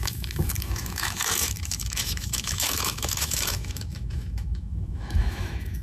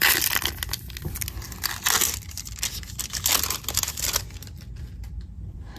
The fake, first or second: first